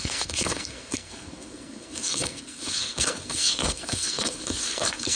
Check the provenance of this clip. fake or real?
fake